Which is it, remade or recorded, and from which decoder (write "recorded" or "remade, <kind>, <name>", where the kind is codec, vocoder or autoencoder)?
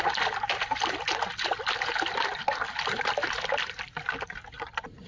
recorded